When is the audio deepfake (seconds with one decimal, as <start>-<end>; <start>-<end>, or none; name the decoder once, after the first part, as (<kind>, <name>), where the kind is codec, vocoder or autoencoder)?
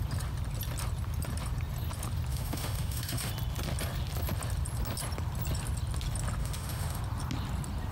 2.3-3.3 (autoencoder, DAC-VAE); 6.4-7.0